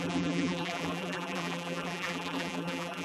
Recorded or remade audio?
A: remade